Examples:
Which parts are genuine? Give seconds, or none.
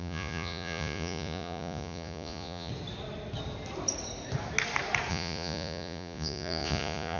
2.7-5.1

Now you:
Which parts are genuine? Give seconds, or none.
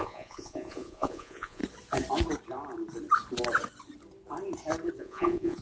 1.6-5.0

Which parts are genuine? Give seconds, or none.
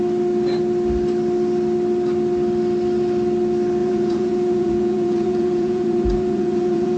0.0-3.8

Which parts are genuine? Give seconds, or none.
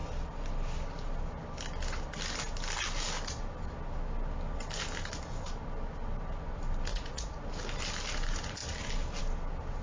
0.0-6.9; 7.4-9.8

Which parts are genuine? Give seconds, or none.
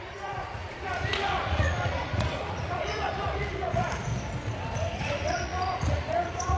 4.1-5.0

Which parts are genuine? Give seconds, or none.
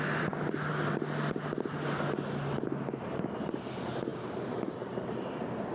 0.0-5.7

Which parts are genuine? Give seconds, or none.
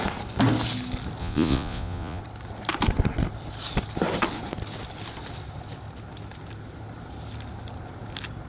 0.0-1.2; 2.2-8.5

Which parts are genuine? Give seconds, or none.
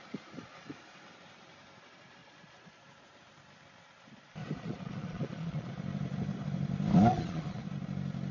0.0-2.2; 2.9-4.4; 5.7-7.1; 7.6-8.3